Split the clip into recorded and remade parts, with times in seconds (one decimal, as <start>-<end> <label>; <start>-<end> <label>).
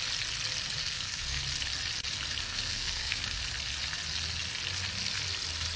0.0-0.8 recorded; 0.8-1.4 remade; 1.4-2.4 recorded; 2.4-3.4 remade; 3.4-5.8 recorded